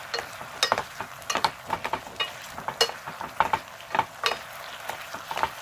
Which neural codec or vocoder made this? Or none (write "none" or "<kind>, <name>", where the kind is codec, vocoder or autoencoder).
none